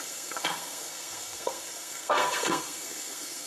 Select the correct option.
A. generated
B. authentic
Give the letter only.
A